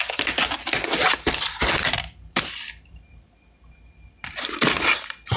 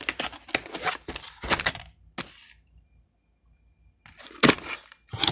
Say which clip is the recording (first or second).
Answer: second